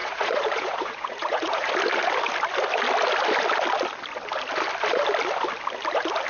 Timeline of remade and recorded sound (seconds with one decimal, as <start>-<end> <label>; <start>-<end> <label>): 0.0-1.7 remade; 1.7-6.3 recorded